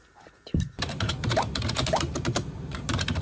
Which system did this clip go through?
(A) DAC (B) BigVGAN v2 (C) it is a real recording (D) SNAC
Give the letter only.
B